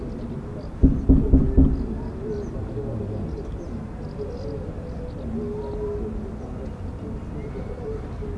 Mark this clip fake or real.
real